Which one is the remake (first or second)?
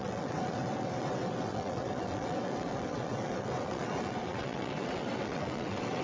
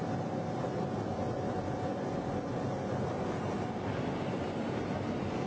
first